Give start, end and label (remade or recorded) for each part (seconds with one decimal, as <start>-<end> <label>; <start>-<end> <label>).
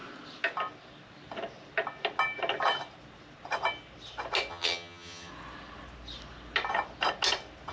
0.0-4.5 recorded; 4.5-5.3 remade; 5.3-7.7 recorded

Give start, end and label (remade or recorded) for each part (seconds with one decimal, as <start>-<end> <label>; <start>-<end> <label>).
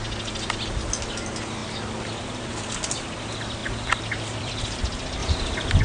0.0-1.6 recorded; 1.6-2.5 remade; 2.5-3.6 recorded; 3.6-4.5 remade; 4.5-5.2 recorded; 5.2-5.8 remade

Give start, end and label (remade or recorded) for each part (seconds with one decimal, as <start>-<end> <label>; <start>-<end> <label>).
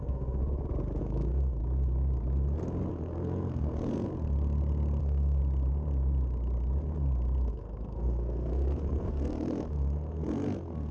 0.0-0.4 remade; 0.4-1.0 recorded; 1.0-1.6 remade; 1.6-2.9 recorded; 2.9-4.1 remade; 4.1-5.0 recorded; 5.0-5.4 remade; 5.4-7.5 recorded; 7.5-10.9 remade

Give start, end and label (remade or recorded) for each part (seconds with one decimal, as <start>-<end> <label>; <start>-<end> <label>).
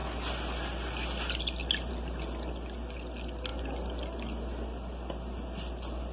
0.0-6.1 recorded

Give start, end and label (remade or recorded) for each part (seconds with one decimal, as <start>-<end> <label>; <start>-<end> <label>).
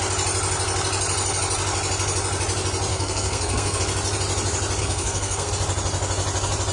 0.0-2.9 recorded; 2.9-3.8 remade; 3.8-4.8 recorded; 4.8-5.5 remade; 5.5-6.7 recorded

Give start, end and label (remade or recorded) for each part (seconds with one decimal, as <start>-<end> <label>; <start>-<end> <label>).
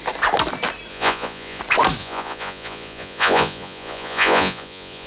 0.0-0.9 recorded; 0.9-1.6 remade; 1.6-2.0 recorded; 2.0-5.1 remade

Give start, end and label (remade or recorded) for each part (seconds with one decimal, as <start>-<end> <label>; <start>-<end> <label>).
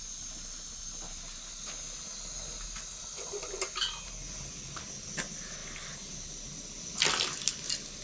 0.0-8.0 recorded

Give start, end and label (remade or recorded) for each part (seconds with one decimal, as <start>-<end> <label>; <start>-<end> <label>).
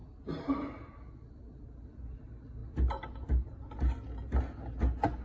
0.0-5.2 recorded